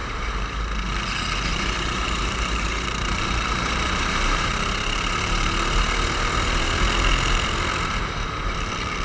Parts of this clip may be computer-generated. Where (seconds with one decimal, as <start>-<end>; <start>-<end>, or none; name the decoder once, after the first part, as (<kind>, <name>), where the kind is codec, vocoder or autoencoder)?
0.0-0.6 (vocoder, BigVGAN v2); 1.5-6.7